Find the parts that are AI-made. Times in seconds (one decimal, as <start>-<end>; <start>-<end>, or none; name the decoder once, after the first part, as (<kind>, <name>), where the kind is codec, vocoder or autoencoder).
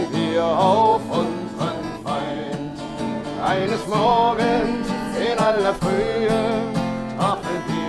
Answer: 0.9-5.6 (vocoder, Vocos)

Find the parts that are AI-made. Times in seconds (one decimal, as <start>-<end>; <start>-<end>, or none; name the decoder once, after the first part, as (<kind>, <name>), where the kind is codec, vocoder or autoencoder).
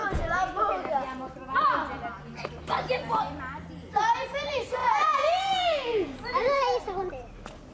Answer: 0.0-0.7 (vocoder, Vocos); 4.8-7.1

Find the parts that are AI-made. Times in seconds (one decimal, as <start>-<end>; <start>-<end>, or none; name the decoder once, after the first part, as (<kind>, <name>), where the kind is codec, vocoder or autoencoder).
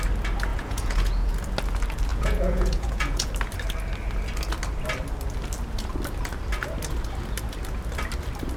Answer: 0.5-1.3 (vocoder, Vocos); 2.1-3.3